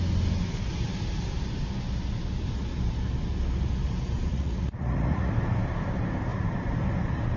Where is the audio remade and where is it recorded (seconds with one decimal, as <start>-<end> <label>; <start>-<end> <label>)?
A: 0.0-4.3 recorded; 4.3-5.3 remade; 5.3-7.4 recorded